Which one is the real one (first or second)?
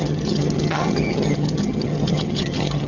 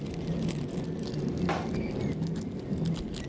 second